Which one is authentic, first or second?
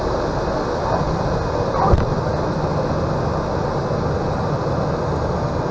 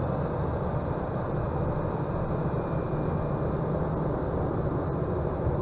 first